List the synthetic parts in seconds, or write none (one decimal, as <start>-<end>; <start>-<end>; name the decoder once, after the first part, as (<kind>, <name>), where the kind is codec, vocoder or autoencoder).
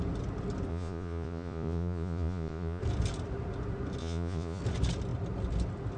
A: 0.7-2.8 (vocoder, Vocos); 4.0-4.6